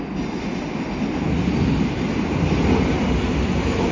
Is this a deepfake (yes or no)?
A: no